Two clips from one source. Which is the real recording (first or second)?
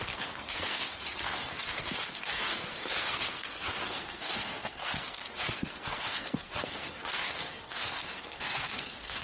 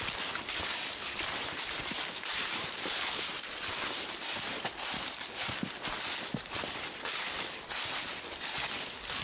second